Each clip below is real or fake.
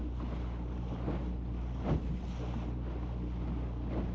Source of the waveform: real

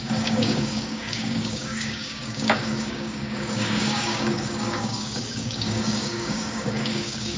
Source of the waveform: fake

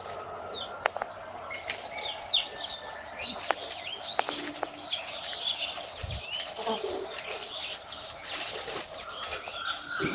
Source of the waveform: real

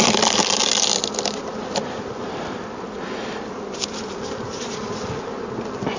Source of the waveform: real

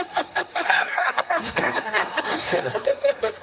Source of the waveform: fake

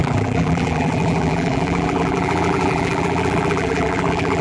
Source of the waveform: fake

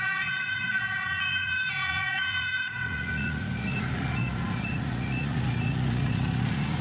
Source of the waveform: fake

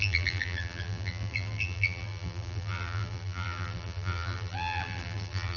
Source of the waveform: fake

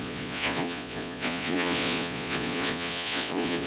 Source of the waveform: fake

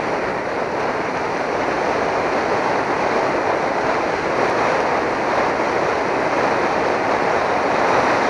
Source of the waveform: real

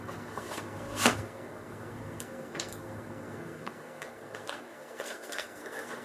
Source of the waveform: fake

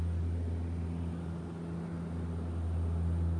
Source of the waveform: real